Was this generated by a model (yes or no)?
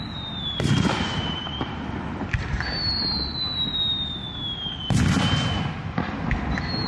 no